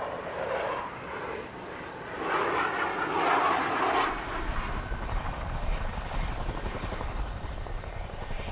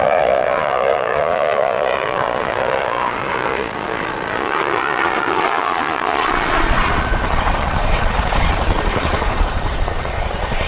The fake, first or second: second